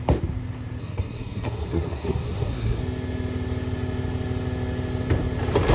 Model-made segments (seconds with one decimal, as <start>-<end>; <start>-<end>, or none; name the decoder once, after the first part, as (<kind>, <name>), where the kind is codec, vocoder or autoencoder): 0.8-2.8 (codec, SNAC)